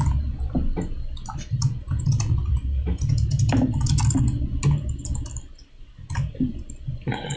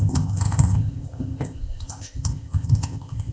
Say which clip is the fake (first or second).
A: second